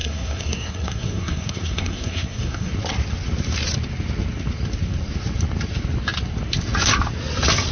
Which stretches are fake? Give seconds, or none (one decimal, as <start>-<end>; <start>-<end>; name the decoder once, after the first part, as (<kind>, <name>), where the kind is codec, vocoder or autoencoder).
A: 0.0-2.7 (codec, SNAC)